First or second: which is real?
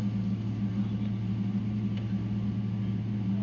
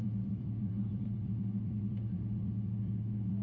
first